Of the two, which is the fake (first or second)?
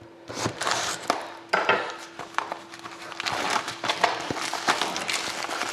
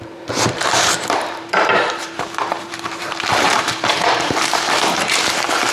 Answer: second